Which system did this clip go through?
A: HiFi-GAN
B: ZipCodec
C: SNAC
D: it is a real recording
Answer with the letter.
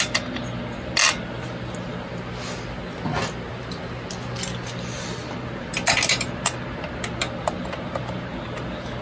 D